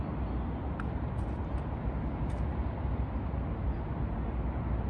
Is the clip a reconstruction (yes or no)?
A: no